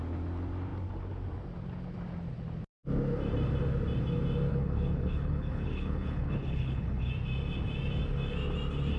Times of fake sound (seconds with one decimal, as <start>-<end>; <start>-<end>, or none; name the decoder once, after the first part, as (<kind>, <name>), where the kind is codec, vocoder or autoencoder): 4.5-7.1 (codec, HILCodec)